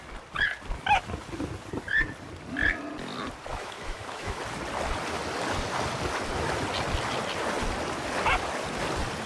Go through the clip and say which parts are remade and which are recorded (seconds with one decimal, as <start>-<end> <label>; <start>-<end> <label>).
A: 0.0-3.5 recorded; 3.5-4.4 remade; 4.4-9.3 recorded